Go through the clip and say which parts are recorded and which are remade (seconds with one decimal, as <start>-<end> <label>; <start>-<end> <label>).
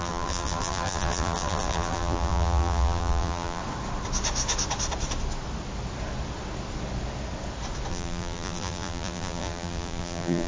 0.0-3.6 remade; 3.6-7.9 recorded; 7.9-10.5 remade